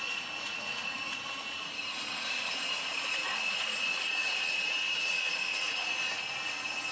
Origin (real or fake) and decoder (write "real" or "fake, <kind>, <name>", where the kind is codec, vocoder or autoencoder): fake, vocoder, Vocos